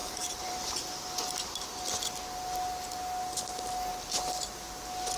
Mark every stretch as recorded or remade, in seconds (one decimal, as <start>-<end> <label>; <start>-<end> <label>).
0.0-0.7 remade; 0.7-5.2 recorded